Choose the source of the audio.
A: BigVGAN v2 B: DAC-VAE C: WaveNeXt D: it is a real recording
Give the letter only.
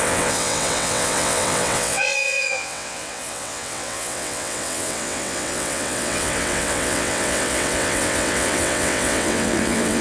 C